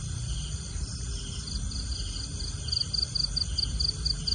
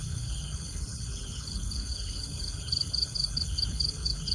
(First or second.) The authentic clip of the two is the first